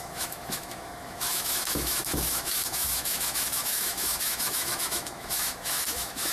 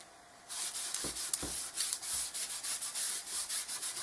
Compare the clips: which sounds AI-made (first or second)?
first